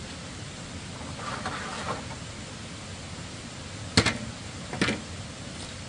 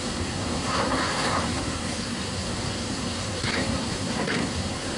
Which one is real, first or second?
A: first